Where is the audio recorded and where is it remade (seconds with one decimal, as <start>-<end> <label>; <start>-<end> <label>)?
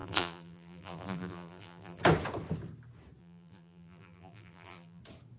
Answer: 0.0-2.0 remade; 2.0-3.2 recorded; 3.2-5.0 remade; 5.0-5.4 recorded